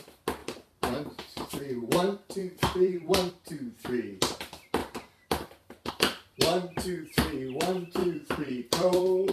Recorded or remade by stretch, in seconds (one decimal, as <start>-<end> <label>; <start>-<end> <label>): 0.0-0.4 recorded; 0.4-1.5 remade; 1.5-2.4 recorded; 2.4-3.3 remade; 3.3-4.8 recorded; 4.8-5.9 remade; 5.9-8.0 recorded; 8.0-9.3 remade